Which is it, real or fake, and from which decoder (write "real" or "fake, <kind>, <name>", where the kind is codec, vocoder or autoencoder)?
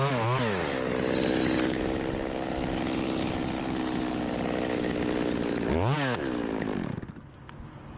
real